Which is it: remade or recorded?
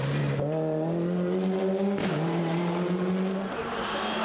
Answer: recorded